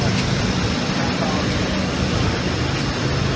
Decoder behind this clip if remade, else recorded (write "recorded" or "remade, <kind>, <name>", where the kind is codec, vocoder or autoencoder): recorded